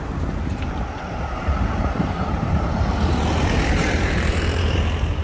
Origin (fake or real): fake